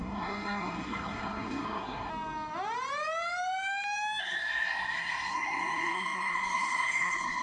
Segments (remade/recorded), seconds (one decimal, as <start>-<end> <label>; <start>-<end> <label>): 0.0-2.1 remade; 2.1-4.2 recorded; 4.2-7.4 remade